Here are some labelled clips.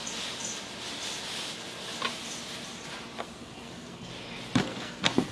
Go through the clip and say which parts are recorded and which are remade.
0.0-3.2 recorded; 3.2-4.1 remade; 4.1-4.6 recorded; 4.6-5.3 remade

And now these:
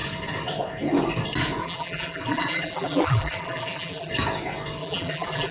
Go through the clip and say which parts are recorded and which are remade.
0.0-1.6 recorded; 1.6-4.1 remade; 4.1-4.8 recorded; 4.8-5.5 remade

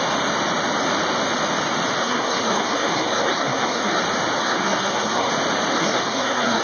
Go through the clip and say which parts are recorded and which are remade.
0.0-2.0 recorded; 2.0-4.0 remade; 4.0-4.4 recorded; 4.4-5.3 remade; 5.3-5.7 recorded; 5.7-6.6 remade

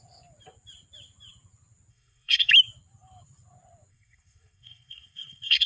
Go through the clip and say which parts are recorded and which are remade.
0.0-1.9 recorded; 1.9-2.5 remade; 2.5-3.9 recorded; 3.9-5.7 remade